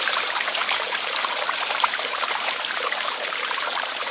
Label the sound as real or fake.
fake